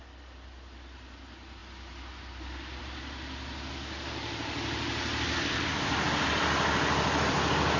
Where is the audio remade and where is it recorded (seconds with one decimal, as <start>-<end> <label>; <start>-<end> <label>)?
0.0-7.8 recorded